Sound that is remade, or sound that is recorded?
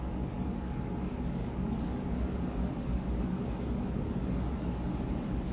remade